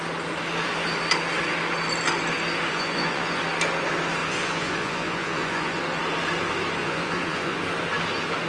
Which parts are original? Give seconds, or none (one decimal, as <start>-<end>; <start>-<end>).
0.0-2.7; 3.4-4.2; 5.8-6.8; 7.6-8.5